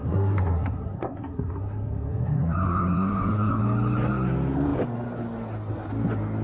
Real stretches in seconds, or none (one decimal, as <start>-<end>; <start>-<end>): 3.6-6.4